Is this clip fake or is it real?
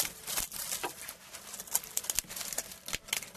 real